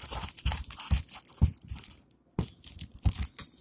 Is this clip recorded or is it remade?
recorded